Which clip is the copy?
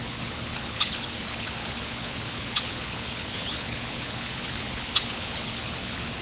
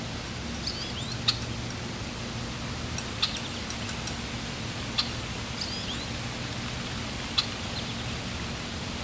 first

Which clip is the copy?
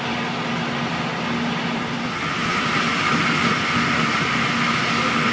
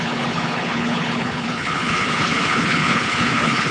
second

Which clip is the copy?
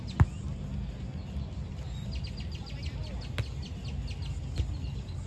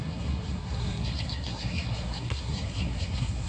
second